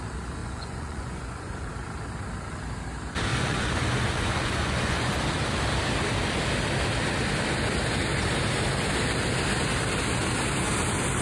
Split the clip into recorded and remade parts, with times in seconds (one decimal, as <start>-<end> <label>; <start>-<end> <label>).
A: 0.0-0.4 recorded; 0.4-1.7 remade; 1.7-3.3 recorded; 3.3-5.1 remade; 5.1-11.2 recorded